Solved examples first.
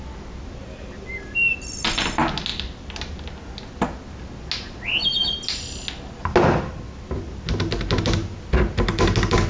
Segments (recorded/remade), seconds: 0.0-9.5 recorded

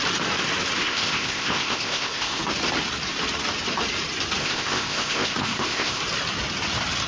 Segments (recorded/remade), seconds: 0.0-0.8 recorded; 0.8-2.4 remade; 2.4-4.4 recorded; 4.4-6.0 remade; 6.0-7.1 recorded